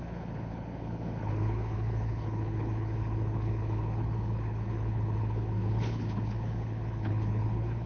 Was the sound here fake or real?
fake